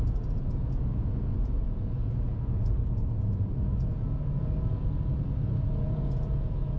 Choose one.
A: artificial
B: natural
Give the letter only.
A